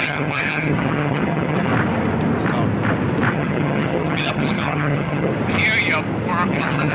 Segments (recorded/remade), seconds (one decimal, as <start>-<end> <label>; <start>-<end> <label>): 0.0-1.7 remade; 1.7-3.3 recorded; 3.3-5.3 remade; 5.3-6.5 recorded; 6.5-6.9 remade